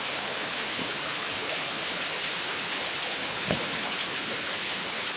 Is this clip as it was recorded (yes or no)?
no